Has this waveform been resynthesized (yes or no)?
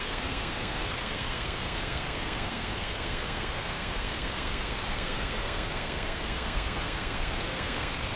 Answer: yes